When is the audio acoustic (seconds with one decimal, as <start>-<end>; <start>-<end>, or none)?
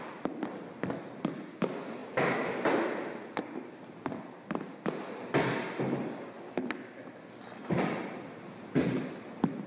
0.0-9.7